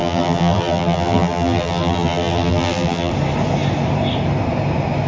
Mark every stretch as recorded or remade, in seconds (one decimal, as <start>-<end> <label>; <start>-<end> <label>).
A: 0.0-3.1 remade; 3.1-5.1 recorded